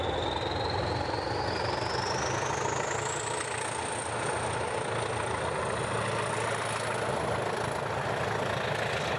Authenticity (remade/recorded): recorded